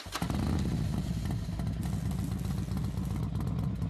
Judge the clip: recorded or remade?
recorded